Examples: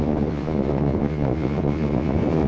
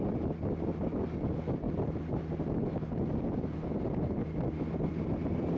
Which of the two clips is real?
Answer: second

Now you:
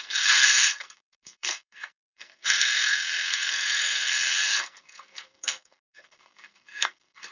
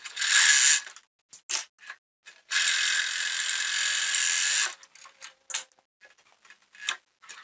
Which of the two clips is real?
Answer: second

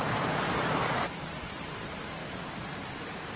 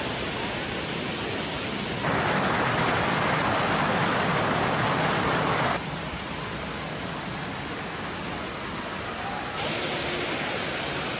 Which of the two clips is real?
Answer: second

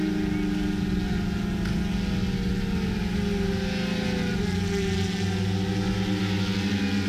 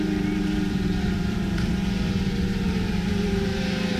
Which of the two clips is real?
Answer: first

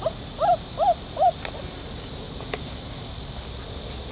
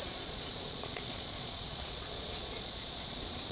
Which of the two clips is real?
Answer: first